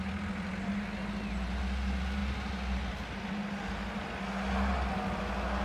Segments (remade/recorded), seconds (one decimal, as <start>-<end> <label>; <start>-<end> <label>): 0.0-5.6 recorded